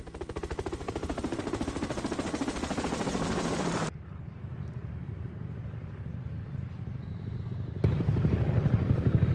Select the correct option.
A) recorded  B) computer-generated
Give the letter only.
A